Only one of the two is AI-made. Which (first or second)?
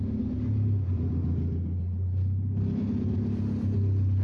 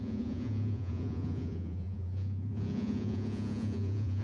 second